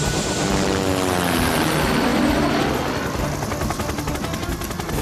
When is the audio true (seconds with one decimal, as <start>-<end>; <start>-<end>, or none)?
0.0-5.0